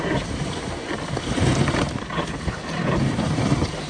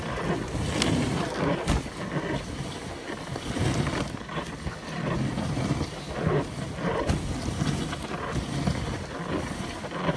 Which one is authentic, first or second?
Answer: second